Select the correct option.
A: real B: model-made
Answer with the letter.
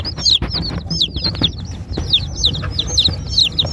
A